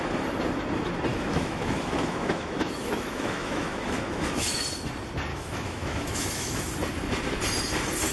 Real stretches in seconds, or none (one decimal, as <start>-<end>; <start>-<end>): 0.0-1.1; 4.6-5.3; 6.7-8.1